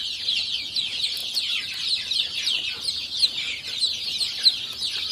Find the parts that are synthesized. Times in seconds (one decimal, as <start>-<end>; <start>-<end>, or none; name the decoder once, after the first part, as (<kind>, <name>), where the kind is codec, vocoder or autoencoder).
none